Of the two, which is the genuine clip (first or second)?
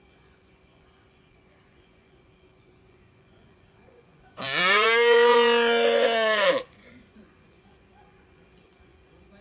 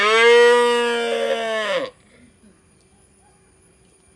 second